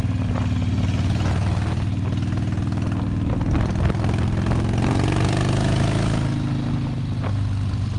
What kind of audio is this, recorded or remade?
recorded